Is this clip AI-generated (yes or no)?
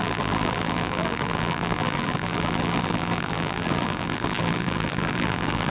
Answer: yes